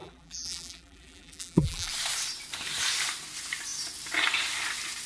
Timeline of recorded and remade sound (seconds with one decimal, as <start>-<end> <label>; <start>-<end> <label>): 0.0-1.9 remade; 1.9-5.1 recorded